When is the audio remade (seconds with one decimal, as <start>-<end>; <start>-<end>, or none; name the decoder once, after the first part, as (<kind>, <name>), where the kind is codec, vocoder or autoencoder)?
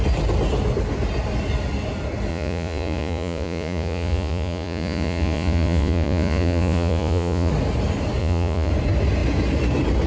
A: 2.3-7.5 (vocoder, Vocos); 8.2-8.7